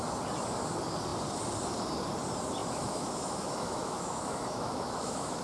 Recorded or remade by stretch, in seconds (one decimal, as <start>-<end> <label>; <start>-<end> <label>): 0.0-2.6 recorded; 2.6-5.4 remade